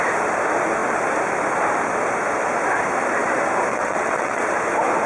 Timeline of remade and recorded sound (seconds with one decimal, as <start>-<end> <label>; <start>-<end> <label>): 0.0-3.7 recorded; 3.7-4.5 remade; 4.5-5.1 recorded